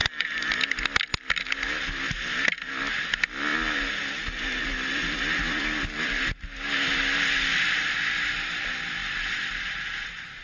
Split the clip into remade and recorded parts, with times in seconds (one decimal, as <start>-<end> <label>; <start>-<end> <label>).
0.0-10.4 recorded